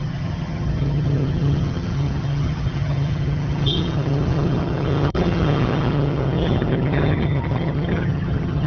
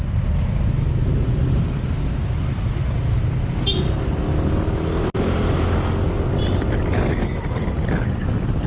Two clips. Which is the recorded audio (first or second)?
second